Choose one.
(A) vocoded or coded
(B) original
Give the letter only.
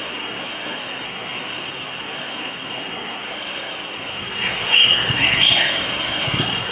A